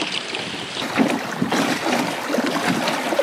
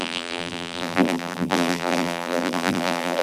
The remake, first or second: second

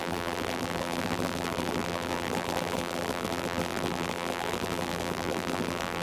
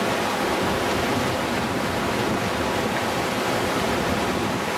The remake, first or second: first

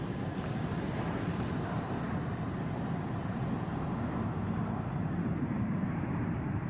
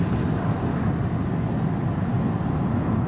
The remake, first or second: first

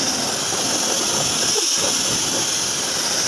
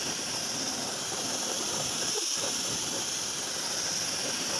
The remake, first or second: second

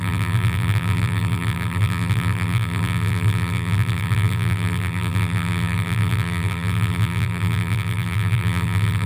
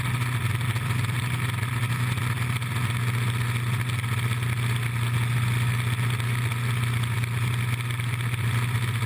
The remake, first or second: first